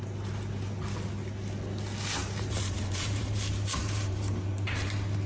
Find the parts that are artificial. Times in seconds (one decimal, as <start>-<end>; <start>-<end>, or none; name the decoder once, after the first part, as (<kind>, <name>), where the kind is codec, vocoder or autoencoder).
2.2-5.3 (vocoder, BigVGAN v2)

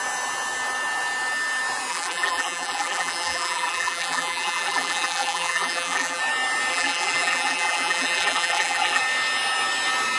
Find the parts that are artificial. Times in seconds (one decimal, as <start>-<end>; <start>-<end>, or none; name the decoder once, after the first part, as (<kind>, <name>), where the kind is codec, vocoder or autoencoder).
1.9-6.2 (vocoder, BigVGAN v2); 6.7-9.0

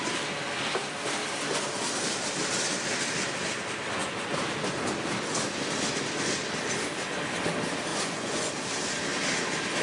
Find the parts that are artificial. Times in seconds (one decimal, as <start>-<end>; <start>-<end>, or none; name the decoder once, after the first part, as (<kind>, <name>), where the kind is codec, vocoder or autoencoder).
7.9-8.5 (vocoder, Vocos)